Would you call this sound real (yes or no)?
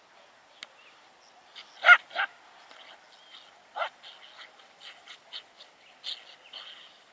yes